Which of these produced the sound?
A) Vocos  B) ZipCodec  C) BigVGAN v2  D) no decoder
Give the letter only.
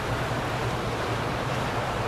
C